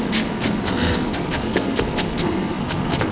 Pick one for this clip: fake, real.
fake